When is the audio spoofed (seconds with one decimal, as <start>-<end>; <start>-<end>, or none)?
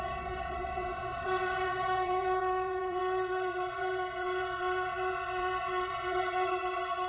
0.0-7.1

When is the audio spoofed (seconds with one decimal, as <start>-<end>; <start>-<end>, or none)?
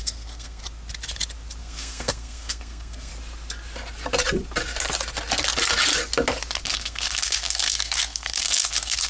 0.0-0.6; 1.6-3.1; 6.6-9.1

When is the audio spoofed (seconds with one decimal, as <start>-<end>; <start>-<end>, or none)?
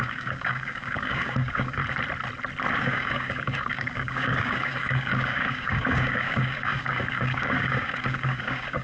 0.0-1.8; 2.8-8.8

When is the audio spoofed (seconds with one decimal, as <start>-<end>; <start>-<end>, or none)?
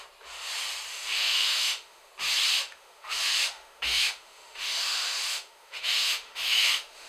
0.9-2.1; 2.5-7.1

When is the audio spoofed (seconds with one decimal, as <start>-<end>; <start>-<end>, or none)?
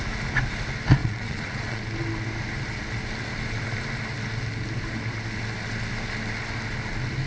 1.0-1.8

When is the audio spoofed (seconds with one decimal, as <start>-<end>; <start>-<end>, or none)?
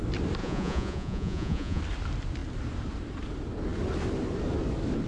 0.4-1.8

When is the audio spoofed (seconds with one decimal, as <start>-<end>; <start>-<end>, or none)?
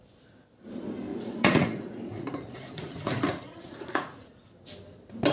1.1-4.3